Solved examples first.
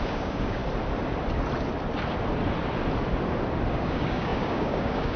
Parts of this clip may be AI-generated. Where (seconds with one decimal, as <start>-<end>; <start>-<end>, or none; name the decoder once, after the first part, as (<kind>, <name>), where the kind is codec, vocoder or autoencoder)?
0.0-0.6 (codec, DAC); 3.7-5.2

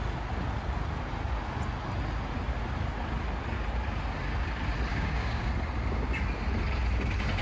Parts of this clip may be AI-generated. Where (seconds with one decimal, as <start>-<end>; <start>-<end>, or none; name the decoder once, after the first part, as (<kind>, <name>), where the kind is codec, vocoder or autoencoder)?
4.9-5.5 (codec, DAC)

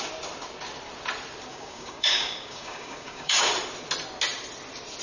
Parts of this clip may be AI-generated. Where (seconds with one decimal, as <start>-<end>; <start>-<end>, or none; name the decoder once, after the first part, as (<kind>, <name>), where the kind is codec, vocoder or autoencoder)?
1.5-3.5 (codec, DAC)

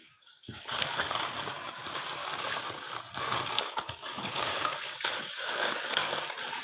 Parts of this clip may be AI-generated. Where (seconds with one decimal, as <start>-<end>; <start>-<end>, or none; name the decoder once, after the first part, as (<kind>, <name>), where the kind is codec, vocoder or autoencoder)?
0.0-1.8 (codec, DAC); 3.2-6.0

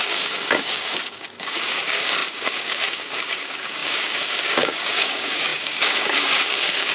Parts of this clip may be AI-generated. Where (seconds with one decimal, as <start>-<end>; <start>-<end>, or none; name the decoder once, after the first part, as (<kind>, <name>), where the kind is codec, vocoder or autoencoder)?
0.0-6.9 (codec, DAC)